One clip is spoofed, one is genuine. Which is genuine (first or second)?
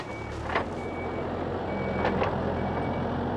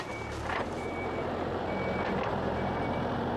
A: first